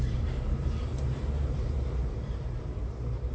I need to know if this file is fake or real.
fake